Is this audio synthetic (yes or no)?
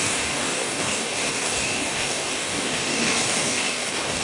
yes